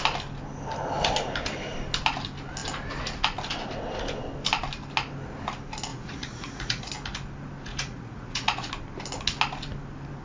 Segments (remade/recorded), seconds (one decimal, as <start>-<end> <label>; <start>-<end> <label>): 0.0-5.9 recorded; 5.9-6.9 remade; 6.9-7.7 recorded; 7.7-8.7 remade; 8.7-10.2 recorded